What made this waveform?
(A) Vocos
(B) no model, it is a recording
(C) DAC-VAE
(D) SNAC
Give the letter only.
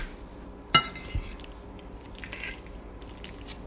B